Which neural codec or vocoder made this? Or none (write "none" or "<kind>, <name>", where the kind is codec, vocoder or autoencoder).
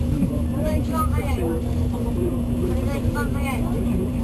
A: vocoder, BigVGAN v2